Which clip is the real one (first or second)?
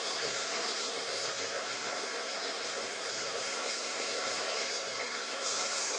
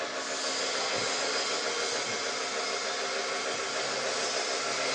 second